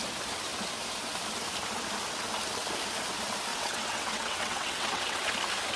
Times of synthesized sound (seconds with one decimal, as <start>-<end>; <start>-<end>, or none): 3.5-5.3